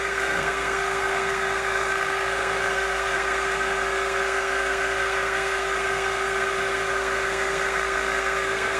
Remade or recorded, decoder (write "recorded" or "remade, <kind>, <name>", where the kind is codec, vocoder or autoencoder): remade, codec, SNAC